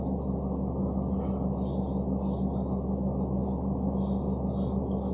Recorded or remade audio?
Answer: recorded